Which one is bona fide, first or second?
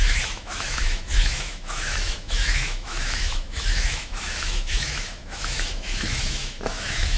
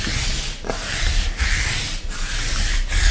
second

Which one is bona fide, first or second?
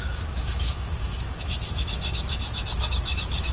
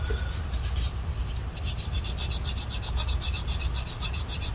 second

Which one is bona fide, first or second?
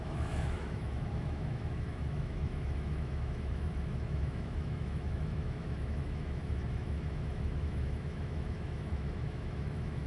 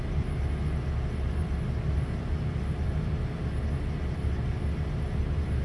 second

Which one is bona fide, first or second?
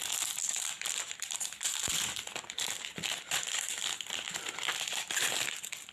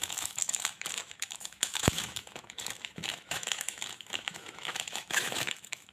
first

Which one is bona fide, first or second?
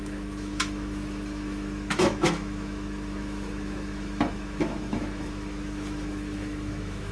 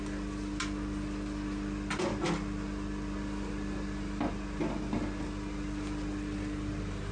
second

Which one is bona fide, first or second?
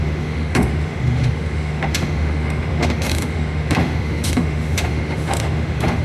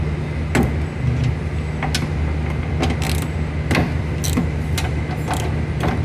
second